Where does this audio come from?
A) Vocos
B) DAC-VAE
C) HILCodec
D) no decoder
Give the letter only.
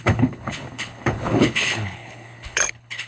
C